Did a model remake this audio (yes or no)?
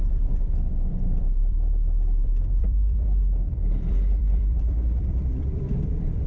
yes